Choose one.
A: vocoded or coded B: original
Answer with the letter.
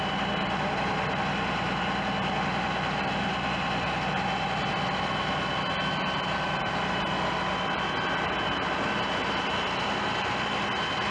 B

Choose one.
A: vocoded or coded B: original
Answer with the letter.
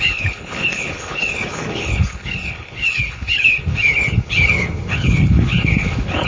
A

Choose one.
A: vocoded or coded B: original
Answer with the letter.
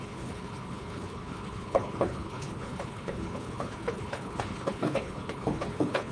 A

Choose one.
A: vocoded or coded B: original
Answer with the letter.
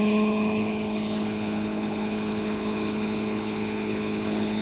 A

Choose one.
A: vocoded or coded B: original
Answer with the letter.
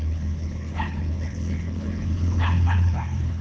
A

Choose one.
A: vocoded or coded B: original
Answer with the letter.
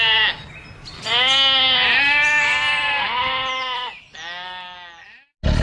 B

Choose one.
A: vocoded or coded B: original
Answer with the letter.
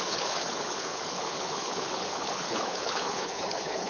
A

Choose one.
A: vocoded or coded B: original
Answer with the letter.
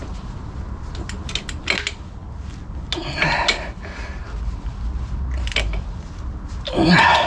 B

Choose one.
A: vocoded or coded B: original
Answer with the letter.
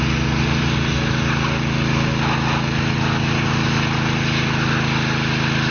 B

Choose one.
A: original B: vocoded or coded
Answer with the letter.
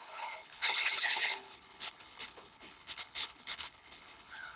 B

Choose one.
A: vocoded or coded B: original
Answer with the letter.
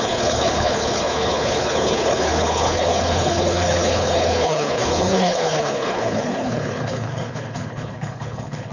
A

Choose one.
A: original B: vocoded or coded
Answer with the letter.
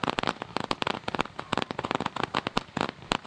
A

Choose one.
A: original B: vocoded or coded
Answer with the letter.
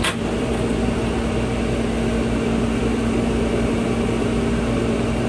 A